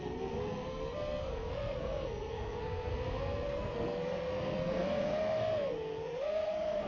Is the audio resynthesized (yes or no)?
yes